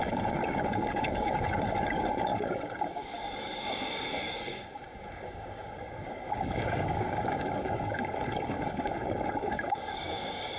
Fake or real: fake